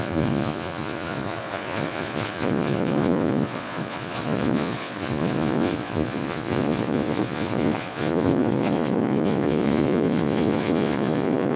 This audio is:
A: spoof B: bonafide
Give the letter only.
A